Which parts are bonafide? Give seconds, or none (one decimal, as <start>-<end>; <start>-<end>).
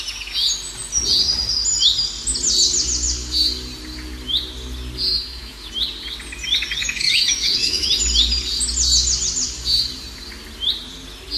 0.0-5.1; 5.7-6.8; 8.0-11.4